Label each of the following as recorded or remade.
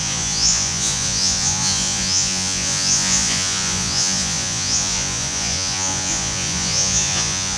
remade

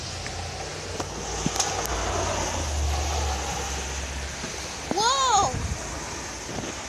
recorded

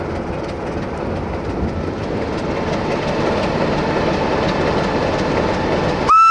recorded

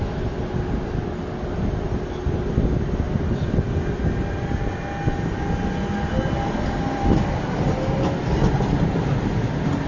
recorded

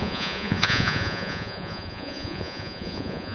remade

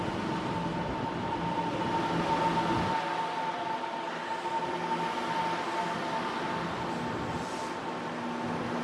recorded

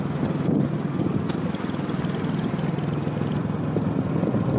recorded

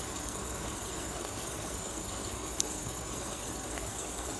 remade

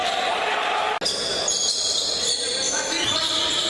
recorded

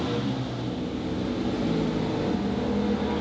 recorded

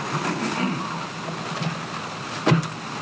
recorded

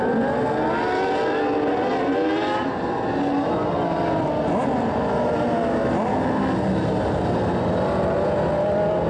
recorded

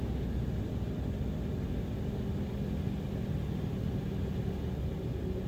recorded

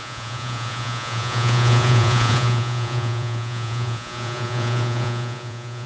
remade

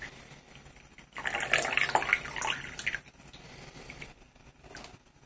recorded